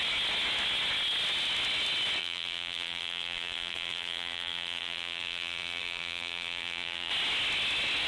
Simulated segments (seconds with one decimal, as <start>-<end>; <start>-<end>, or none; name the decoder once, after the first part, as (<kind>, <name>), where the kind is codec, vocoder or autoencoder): 2.2-7.1 (vocoder, BigVGAN v2)